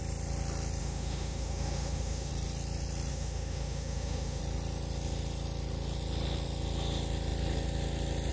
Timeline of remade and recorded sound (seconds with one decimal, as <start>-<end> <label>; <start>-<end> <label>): 0.0-0.8 recorded; 0.8-2.3 remade; 2.3-3.1 recorded; 3.1-4.4 remade; 4.4-8.3 recorded